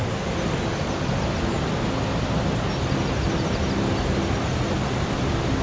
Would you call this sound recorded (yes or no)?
yes